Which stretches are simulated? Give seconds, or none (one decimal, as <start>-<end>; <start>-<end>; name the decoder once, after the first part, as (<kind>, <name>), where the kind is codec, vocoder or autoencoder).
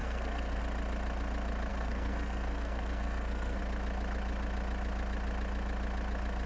0.0-0.6 (codec, SNAC); 1.7-3.6